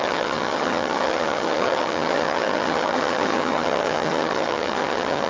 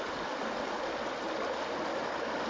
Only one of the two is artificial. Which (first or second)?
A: first